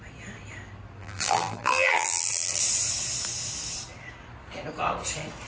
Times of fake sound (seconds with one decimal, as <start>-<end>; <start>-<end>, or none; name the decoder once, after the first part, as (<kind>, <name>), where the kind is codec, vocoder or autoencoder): 1.0-2.6 (vocoder, BigVGAN v2)